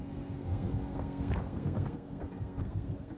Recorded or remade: remade